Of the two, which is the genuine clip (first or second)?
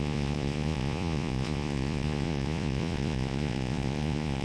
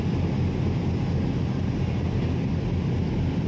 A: second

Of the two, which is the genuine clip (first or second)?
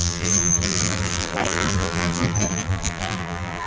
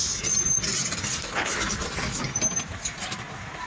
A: second